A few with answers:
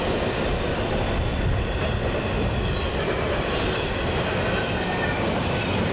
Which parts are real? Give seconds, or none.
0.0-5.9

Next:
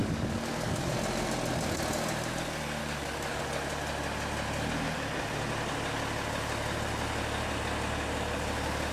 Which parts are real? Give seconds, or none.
0.9-2.8; 3.4-8.9

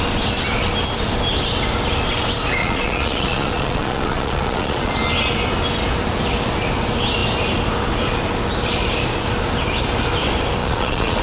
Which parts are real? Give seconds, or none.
0.0-2.6; 4.9-10.6

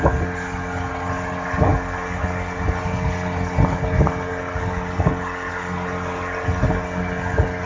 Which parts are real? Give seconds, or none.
0.0-7.7

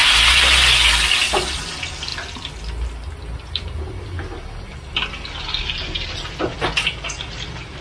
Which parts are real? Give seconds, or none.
0.0-7.8

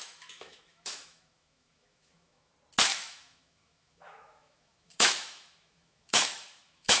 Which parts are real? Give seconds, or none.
2.5-2.9

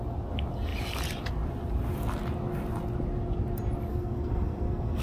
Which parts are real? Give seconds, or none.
0.0-3.9

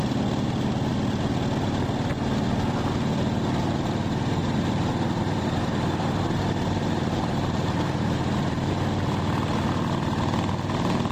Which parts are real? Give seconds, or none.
0.0-4.4; 8.7-11.1